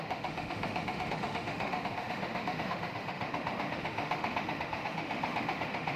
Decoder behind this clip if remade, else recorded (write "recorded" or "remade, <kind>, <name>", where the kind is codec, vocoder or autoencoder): remade, autoencoder, DAC-VAE